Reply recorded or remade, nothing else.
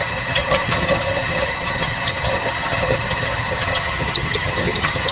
remade